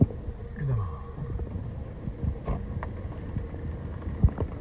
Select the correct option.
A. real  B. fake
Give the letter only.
A